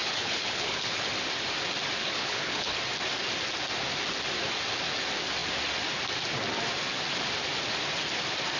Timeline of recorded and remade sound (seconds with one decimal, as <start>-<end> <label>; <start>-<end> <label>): 0.0-1.1 remade; 1.1-2.0 recorded; 2.0-2.8 remade; 2.8-8.6 recorded